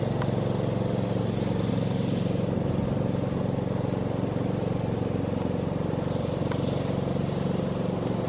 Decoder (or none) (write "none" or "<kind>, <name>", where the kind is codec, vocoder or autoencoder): none